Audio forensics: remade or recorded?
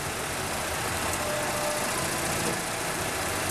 recorded